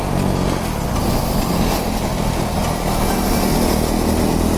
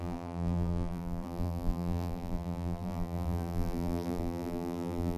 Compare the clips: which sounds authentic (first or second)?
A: first